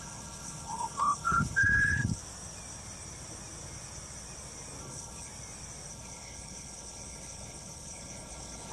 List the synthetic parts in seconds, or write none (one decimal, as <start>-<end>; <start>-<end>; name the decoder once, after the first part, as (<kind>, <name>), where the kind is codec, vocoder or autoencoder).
0.0-2.2 (codec, HILCodec); 4.8-5.3; 5.9-8.7